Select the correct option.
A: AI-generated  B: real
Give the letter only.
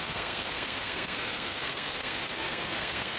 A